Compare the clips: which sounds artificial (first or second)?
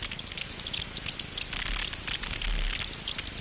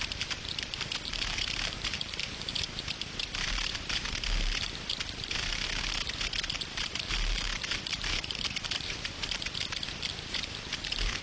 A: second